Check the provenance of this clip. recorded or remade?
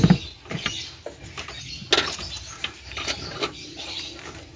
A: recorded